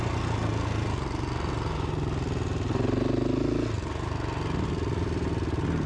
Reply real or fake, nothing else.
real